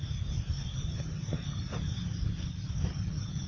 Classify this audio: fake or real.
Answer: real